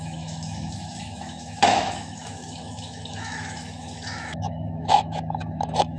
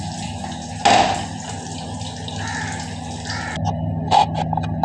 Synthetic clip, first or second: first